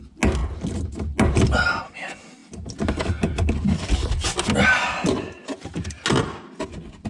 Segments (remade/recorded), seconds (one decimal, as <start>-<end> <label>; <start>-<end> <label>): 0.0-7.1 recorded